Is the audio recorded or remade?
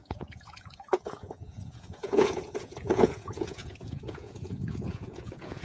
remade